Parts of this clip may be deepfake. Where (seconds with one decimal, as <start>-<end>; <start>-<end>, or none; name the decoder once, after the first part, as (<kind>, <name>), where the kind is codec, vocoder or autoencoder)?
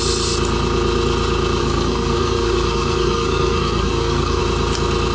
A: 1.6-4.4 (codec, SNAC)